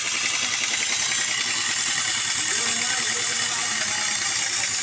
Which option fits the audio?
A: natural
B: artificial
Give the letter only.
A